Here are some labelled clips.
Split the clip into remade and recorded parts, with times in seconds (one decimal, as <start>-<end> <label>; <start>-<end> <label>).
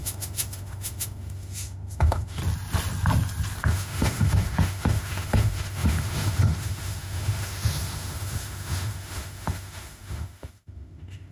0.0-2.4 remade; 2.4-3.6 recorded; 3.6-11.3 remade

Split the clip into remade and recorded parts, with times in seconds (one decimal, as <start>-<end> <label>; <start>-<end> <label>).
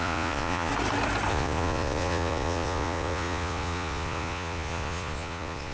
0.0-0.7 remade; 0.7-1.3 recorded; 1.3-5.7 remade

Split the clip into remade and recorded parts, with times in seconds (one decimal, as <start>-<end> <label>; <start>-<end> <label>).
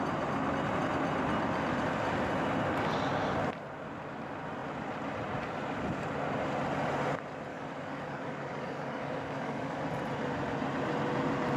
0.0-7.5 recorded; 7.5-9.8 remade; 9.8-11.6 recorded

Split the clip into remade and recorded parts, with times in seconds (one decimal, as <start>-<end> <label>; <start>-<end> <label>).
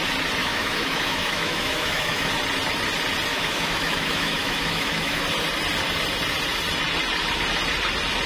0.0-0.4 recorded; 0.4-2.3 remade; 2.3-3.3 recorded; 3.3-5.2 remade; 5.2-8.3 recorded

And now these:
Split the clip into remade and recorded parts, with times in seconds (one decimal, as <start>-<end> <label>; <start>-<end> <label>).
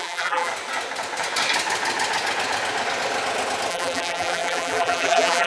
0.0-0.5 remade; 0.5-3.7 recorded; 3.7-5.5 remade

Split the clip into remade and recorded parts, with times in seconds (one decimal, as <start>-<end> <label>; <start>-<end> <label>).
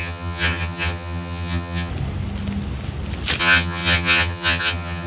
0.0-1.9 remade; 1.9-3.4 recorded; 3.4-5.1 remade